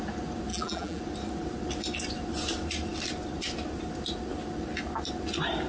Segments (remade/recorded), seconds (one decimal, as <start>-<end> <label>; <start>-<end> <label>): 0.0-0.5 recorded; 0.5-1.0 remade; 1.0-5.7 recorded